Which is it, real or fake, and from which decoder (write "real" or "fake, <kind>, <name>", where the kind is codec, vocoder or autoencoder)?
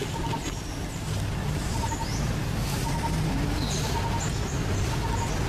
real